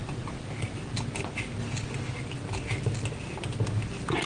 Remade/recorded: recorded